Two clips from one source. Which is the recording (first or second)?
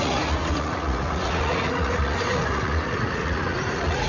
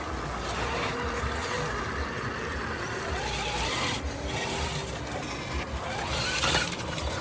second